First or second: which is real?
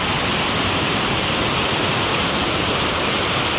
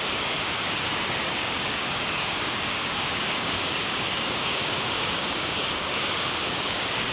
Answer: first